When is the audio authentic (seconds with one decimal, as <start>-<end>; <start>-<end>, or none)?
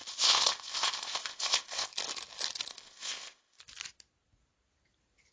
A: 1.9-2.7; 3.6-5.3